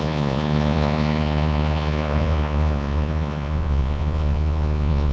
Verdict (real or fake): fake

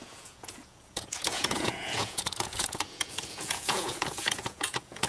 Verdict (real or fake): fake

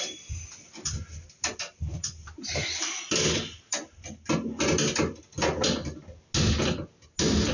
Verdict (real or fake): real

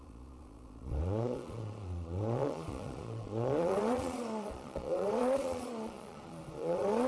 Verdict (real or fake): fake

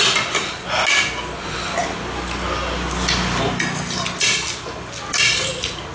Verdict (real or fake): real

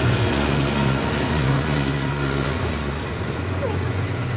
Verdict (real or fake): fake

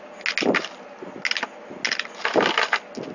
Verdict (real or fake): real